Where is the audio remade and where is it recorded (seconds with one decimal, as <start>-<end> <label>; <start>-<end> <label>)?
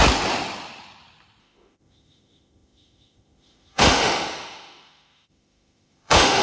0.0-1.4 recorded; 1.4-6.4 remade